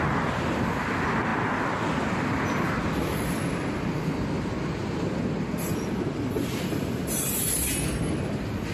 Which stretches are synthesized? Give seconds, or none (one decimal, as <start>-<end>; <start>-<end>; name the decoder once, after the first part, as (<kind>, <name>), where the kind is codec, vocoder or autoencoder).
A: none